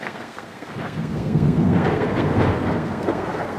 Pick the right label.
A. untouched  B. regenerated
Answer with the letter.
B